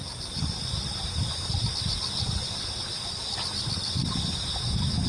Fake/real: real